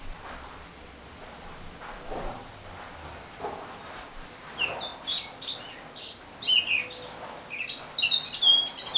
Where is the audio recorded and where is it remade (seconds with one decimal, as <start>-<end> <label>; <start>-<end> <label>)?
0.0-9.0 recorded